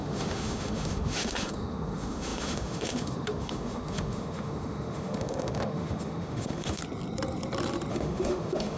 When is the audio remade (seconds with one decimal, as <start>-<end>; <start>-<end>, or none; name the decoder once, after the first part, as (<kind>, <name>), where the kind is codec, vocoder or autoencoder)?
0.0-6.8 (autoencoder, DAC-VAE); 7.9-8.8